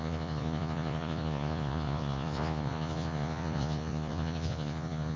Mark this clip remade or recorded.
remade